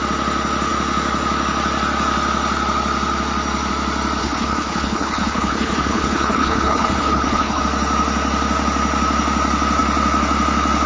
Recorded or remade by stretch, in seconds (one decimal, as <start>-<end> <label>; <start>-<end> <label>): 0.0-4.2 recorded; 4.2-7.6 remade; 7.6-10.9 recorded